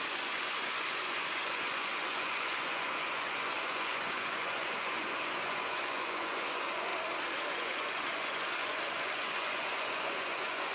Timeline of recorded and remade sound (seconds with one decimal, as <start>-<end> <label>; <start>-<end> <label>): 0.0-6.9 remade; 6.9-7.5 recorded; 7.5-10.7 remade